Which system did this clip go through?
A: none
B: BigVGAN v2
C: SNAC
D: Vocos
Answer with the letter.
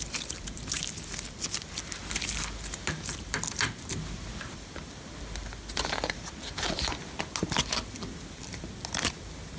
A